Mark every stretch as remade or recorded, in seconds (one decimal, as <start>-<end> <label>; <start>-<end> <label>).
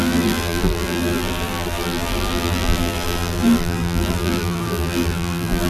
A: 0.0-5.7 remade